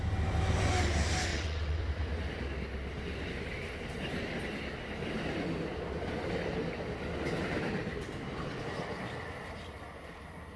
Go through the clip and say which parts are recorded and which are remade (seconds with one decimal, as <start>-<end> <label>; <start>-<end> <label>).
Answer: 0.0-1.3 recorded; 1.3-1.8 remade; 1.8-10.6 recorded